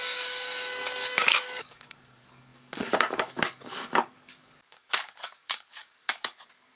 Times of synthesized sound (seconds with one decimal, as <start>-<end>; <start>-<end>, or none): 0.0-6.8